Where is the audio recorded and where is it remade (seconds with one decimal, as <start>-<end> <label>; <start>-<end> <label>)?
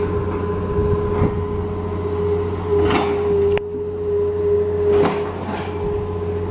0.0-6.5 recorded